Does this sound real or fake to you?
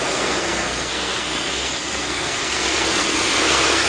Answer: fake